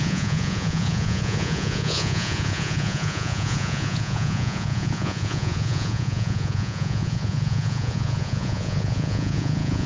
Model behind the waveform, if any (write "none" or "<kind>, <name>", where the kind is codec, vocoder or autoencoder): vocoder, Vocos